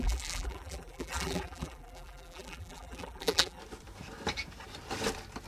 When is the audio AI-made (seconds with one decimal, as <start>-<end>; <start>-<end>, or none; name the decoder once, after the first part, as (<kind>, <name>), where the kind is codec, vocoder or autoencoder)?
0.0-3.6 (vocoder, BigVGAN v2)